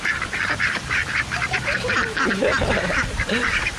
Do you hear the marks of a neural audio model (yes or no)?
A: yes